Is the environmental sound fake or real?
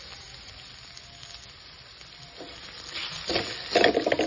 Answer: real